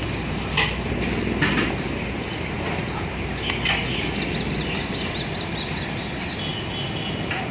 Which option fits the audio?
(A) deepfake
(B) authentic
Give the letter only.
B